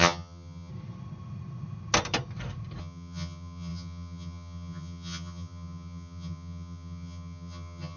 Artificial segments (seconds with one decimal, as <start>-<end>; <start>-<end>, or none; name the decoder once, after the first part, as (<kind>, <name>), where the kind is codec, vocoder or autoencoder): 0.0-0.7 (vocoder, HiFi-GAN); 2.8-8.0